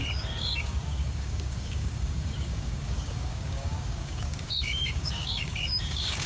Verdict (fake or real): fake